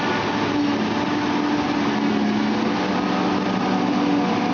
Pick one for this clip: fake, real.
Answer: real